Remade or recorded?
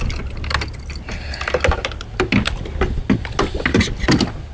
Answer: recorded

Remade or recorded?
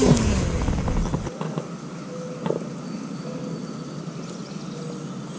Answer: recorded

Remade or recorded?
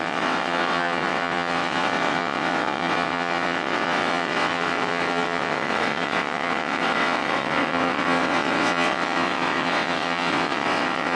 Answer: remade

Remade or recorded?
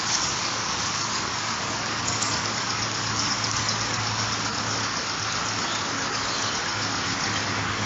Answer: remade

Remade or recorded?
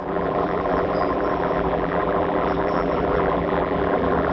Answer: remade